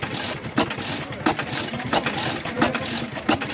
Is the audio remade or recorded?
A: recorded